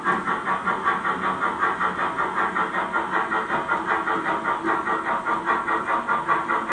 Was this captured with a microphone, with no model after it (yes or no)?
yes